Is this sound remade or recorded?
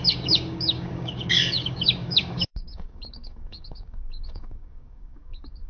remade